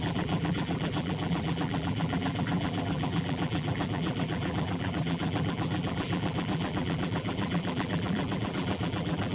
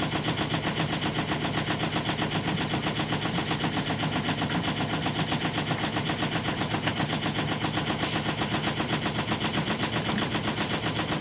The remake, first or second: first